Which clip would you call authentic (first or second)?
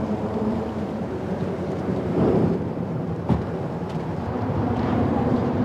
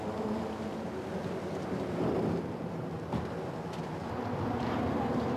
second